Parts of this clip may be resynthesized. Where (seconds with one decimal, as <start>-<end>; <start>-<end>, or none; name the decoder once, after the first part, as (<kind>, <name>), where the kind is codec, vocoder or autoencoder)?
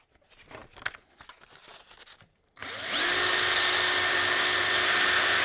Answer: none